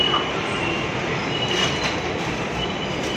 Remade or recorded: remade